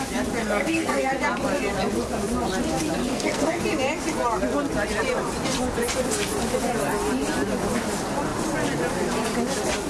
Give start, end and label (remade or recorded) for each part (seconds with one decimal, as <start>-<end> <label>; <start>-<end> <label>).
0.0-0.4 recorded; 0.4-1.1 remade; 1.1-3.0 recorded; 3.0-3.6 remade; 3.6-9.9 recorded